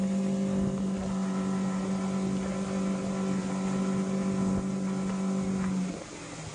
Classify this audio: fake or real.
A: real